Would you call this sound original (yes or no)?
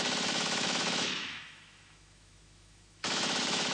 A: no